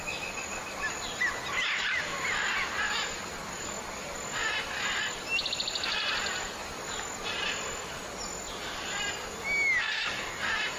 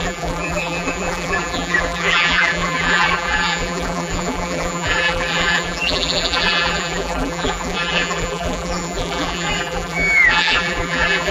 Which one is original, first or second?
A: first